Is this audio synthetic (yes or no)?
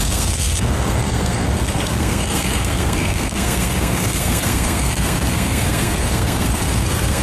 yes